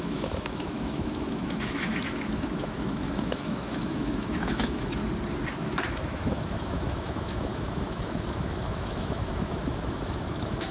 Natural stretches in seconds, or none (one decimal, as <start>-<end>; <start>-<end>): 5.0-5.6